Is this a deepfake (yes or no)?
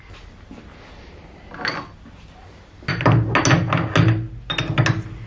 no